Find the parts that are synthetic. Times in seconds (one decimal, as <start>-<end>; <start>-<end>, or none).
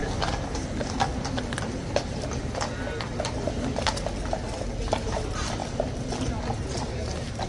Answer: none